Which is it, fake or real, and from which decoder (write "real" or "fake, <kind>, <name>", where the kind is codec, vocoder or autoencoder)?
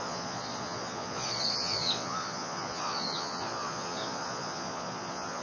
fake, vocoder, Vocos